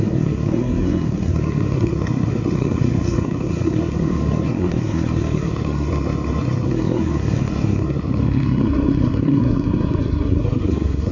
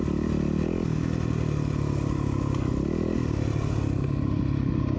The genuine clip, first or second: second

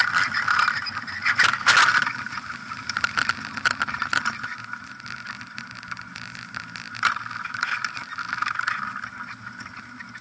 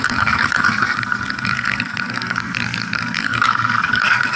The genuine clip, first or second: first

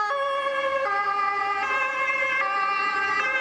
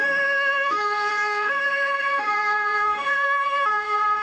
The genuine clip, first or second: first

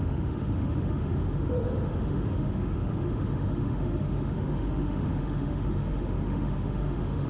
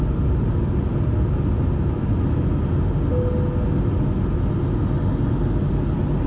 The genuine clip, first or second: second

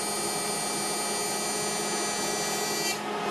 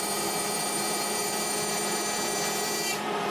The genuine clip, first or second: first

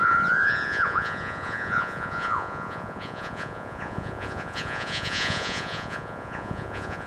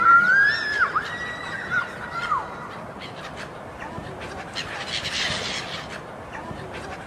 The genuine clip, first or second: second